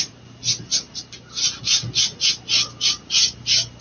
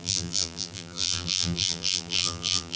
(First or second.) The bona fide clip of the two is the first